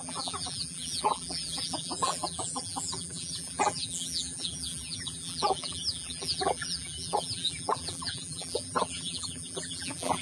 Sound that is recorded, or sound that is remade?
remade